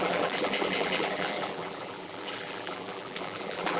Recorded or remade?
remade